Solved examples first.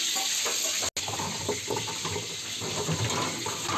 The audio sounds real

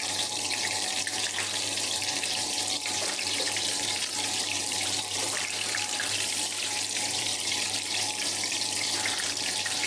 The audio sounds fake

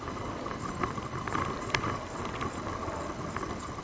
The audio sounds fake